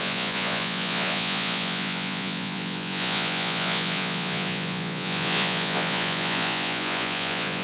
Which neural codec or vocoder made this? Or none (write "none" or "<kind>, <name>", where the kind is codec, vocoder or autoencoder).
vocoder, Vocos